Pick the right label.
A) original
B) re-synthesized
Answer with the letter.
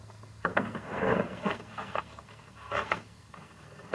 B